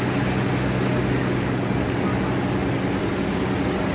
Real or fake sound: real